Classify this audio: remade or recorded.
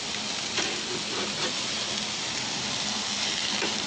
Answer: recorded